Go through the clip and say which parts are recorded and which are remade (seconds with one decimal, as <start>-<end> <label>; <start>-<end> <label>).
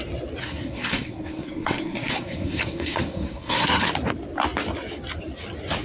0.0-0.4 recorded; 0.4-3.9 remade; 3.9-5.8 recorded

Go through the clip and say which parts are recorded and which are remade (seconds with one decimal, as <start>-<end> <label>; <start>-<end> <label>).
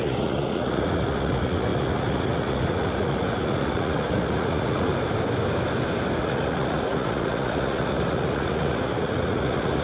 0.0-4.9 remade; 4.9-6.2 recorded; 6.2-9.8 remade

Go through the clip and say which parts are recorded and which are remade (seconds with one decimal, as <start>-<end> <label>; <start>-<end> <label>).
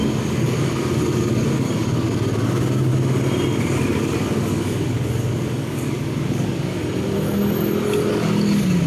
0.0-2.9 remade; 2.9-3.6 recorded; 3.6-6.8 remade; 6.8-8.1 recorded; 8.1-8.9 remade